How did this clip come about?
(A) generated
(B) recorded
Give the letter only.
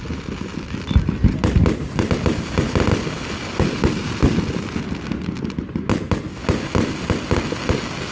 B